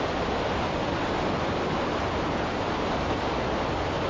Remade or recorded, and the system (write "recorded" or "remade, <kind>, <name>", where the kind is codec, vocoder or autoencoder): recorded